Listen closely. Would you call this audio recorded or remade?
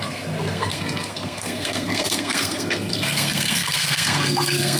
remade